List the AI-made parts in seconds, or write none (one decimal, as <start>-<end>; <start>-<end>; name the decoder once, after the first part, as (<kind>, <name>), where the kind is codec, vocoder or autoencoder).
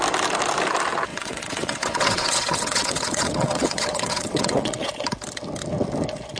1.1-4.9 (vocoder, WaveNeXt)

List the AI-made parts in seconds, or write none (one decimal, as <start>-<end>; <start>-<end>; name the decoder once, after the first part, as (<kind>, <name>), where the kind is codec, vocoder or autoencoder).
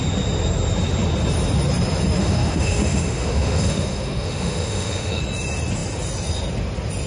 2.2-5.2 (autoencoder, DAC-VAE)